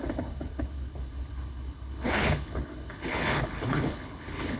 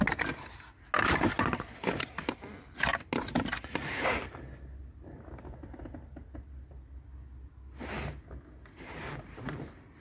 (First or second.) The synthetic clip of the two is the first